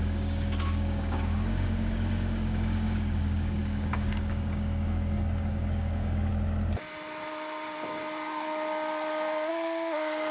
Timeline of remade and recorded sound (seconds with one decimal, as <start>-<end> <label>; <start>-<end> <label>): 0.0-6.3 remade; 6.3-9.5 recorded; 9.5-10.3 remade